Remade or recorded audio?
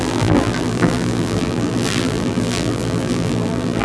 remade